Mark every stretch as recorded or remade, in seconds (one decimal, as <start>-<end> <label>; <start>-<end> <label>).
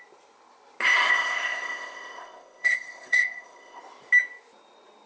0.0-1.1 recorded; 1.1-3.8 remade; 3.8-5.1 recorded